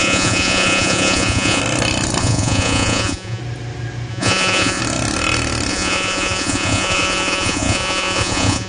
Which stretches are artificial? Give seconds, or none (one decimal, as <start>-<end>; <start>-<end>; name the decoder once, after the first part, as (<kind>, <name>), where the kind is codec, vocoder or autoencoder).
0.0-1.6 (vocoder, Vocos); 2.2-3.4; 4.1-4.8; 5.7-8.7